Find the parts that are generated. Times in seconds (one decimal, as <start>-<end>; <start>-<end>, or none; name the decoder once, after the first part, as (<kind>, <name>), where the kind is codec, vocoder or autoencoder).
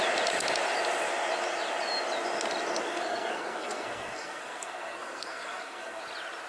2.9-6.0 (codec, SNAC)